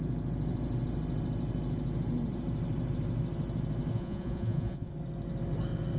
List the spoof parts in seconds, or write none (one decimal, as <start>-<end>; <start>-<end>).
3.9-4.9